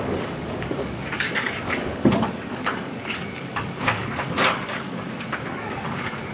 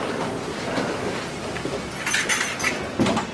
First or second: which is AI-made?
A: first